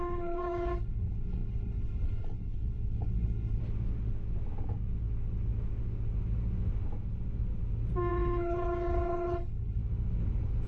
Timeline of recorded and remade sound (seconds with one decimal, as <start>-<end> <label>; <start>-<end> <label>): 0.0-3.6 remade; 3.6-8.1 recorded; 8.1-9.8 remade; 9.8-10.7 recorded